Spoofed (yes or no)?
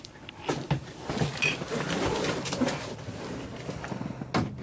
no